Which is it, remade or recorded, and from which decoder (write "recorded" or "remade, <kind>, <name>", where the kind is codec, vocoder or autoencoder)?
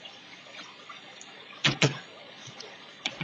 remade, vocoder, Vocos